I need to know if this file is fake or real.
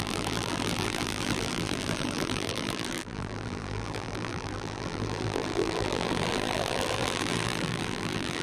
fake